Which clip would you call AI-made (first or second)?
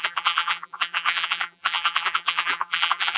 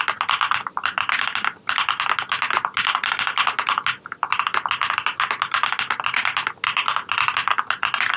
first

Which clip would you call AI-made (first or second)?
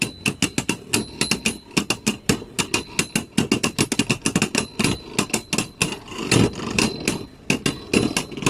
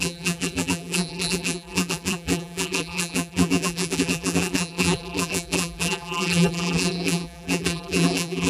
second